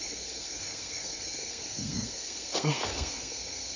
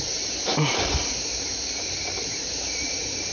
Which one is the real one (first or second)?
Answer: second